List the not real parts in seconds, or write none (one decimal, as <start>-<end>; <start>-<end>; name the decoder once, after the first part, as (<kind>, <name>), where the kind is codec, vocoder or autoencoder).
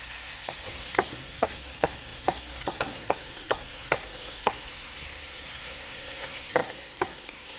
0.0-7.6 (codec, SNAC)